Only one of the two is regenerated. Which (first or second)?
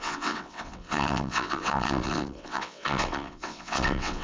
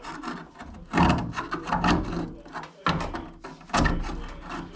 first